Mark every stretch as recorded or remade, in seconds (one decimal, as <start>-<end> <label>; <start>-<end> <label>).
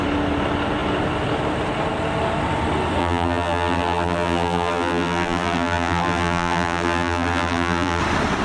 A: 0.0-3.0 recorded; 3.0-8.0 remade; 8.0-8.4 recorded